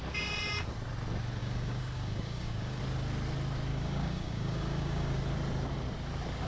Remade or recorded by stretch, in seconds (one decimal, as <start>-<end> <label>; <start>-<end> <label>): 0.0-1.4 recorded; 1.4-2.8 remade; 2.8-3.7 recorded; 3.7-5.1 remade; 5.1-6.5 recorded